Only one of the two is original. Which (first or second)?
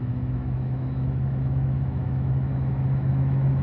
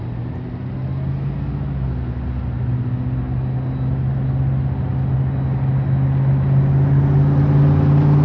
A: second